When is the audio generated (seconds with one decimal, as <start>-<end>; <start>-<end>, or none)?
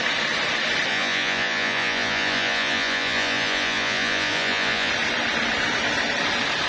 0.9-4.9